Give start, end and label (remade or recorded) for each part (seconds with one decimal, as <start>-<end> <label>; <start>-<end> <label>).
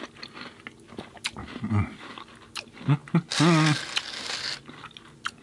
0.0-5.4 recorded